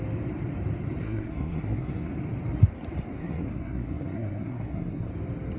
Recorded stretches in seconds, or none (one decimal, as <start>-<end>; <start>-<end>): 0.0-1.0; 2.1-3.2; 5.1-5.6